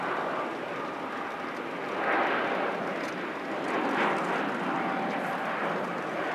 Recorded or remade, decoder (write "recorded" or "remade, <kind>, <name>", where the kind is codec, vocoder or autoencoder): recorded